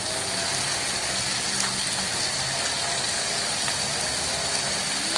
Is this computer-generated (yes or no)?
no